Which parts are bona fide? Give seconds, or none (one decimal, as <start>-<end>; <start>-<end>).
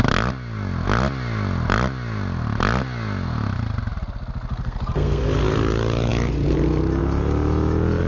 0.0-4.5; 5.2-8.1